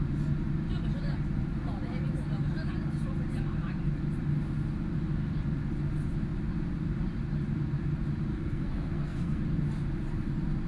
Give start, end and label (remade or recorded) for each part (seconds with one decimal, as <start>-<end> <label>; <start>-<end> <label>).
0.0-8.3 recorded; 8.3-9.4 remade; 9.4-10.7 recorded